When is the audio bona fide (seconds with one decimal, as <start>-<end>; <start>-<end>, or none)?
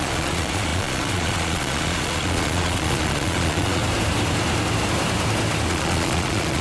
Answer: 3.8-5.7